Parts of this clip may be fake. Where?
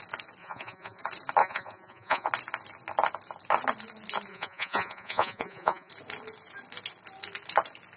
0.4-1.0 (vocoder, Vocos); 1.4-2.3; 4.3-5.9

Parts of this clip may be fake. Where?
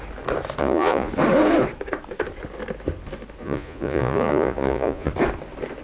0.6-1.1 (vocoder, Vocos); 3.4-5.1